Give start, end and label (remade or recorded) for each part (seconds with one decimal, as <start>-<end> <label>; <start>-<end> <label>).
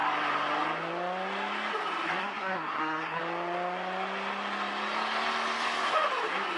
0.0-2.2 recorded; 2.2-3.2 remade; 3.2-6.6 recorded